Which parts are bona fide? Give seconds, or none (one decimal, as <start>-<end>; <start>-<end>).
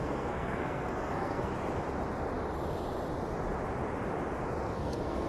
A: 1.5-4.6